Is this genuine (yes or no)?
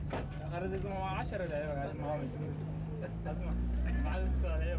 yes